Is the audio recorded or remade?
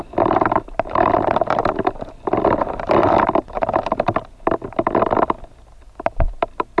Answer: recorded